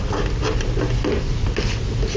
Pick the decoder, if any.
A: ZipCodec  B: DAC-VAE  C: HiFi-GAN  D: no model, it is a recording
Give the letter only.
D